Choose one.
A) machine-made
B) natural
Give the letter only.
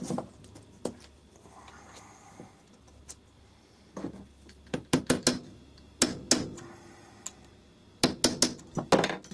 B